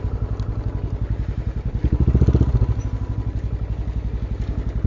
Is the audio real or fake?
real